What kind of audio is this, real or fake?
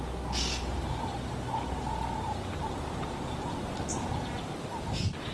real